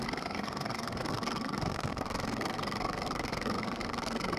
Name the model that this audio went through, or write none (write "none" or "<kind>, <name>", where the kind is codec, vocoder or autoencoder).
codec, SNAC